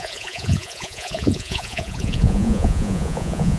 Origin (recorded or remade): remade